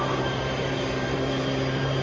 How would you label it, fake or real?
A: fake